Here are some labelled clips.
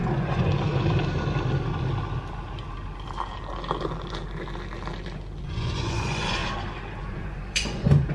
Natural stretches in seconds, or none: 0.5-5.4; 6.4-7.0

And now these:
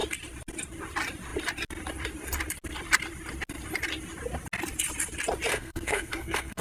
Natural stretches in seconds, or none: 0.0-5.5